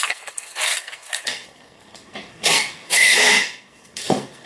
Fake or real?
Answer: fake